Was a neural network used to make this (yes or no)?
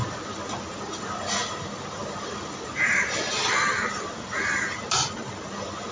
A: no